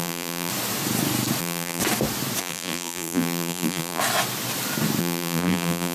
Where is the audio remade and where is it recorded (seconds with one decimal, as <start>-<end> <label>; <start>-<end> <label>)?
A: 0.0-0.5 remade; 0.5-1.4 recorded; 1.4-1.8 remade; 1.8-2.4 recorded; 2.4-4.0 remade; 4.0-5.0 recorded; 5.0-5.9 remade